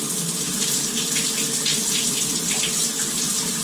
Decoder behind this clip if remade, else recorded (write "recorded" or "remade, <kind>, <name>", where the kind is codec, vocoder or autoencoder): recorded